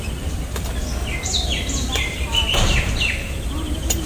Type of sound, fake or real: real